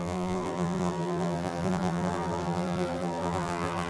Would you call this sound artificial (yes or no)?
yes